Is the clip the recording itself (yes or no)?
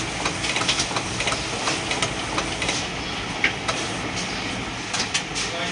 yes